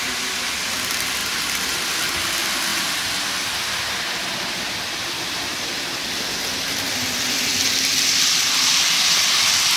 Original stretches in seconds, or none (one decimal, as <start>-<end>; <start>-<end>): 0.0-9.8